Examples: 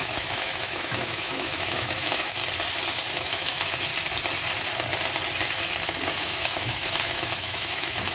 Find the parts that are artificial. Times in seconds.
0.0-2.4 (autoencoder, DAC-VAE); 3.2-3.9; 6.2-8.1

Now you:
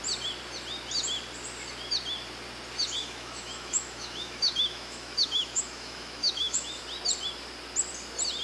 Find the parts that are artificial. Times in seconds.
3.0-6.8 (autoencoder, DAC-VAE)

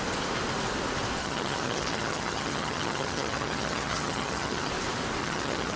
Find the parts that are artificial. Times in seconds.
1.2-4.7 (vocoder, HiFi-GAN); 5.2-5.8

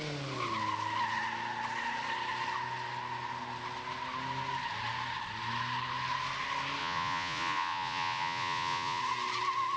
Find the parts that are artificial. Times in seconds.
6.8-9.0 (vocoder, Vocos)

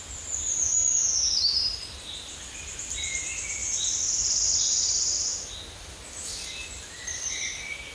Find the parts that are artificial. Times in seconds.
1.7-2.7 (vocoder, BigVGAN v2); 5.3-7.5

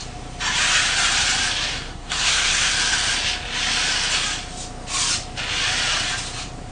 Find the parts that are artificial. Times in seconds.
1.7-2.7 (codec, SNAC)

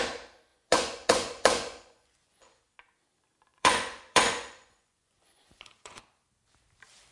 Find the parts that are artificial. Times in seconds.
0.5-2.6 (vocoder, Vocos); 3.5-6.0

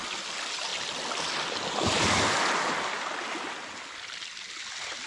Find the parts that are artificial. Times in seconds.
none